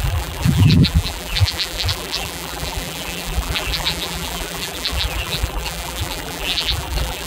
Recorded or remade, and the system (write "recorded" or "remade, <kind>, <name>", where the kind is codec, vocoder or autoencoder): remade, vocoder, BigVGAN v2